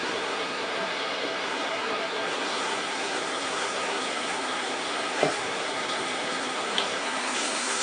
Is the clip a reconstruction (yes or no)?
yes